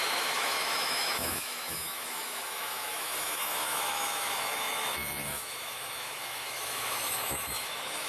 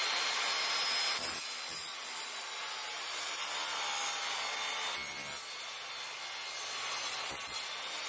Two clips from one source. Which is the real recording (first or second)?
second